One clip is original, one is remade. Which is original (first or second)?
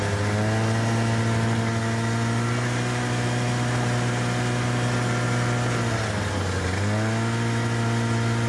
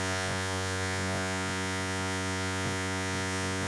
first